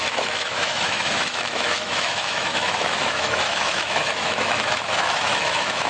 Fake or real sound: fake